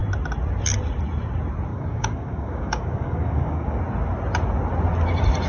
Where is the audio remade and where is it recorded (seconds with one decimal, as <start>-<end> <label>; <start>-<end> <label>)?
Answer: 0.0-1.7 recorded; 1.7-3.8 remade; 3.8-5.5 recorded